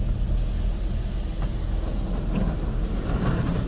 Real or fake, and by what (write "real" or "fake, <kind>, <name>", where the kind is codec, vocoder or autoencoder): real